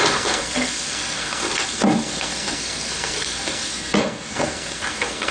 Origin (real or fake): fake